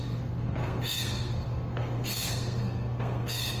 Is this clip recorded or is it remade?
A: remade